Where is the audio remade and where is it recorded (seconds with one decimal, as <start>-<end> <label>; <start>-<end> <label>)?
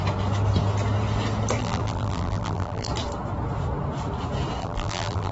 0.0-1.6 recorded; 1.6-2.9 remade; 2.9-4.6 recorded; 4.6-5.3 remade